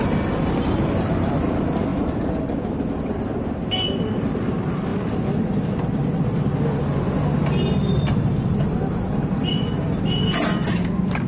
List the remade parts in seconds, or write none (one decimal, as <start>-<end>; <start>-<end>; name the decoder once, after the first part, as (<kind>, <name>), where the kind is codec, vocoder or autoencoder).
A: none